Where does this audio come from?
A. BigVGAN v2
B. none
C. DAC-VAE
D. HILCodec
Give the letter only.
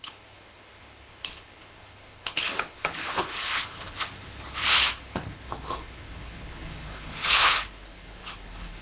D